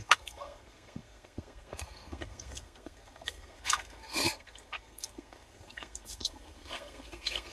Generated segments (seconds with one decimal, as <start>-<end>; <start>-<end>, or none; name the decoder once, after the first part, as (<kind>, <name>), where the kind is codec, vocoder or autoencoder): 0.0-7.5 (codec, SNAC)